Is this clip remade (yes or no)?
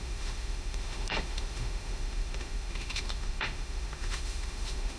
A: yes